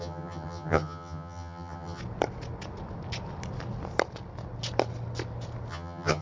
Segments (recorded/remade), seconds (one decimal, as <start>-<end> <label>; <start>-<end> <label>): 0.0-2.0 remade; 2.0-5.7 recorded; 5.7-6.2 remade